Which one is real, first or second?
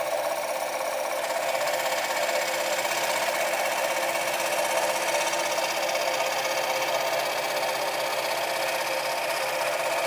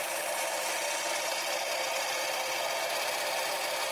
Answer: first